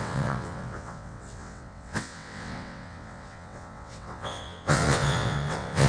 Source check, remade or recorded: remade